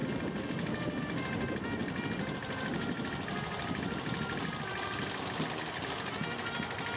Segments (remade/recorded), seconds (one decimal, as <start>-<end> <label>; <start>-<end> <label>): 0.0-7.0 recorded